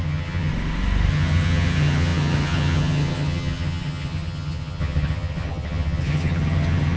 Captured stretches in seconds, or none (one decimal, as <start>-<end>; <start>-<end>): 0.5-1.1